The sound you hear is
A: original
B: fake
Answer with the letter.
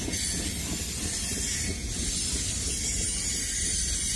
A